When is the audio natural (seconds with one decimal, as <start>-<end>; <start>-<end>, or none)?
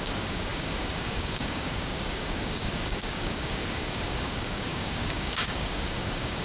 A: none